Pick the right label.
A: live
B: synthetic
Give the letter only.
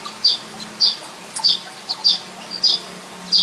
A